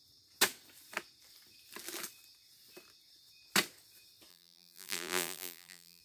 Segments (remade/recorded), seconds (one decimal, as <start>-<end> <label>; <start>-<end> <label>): 0.0-4.3 recorded; 4.3-6.0 remade